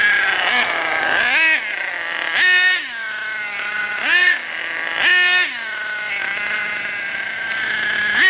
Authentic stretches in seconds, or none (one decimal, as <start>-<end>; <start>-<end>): 0.0-8.3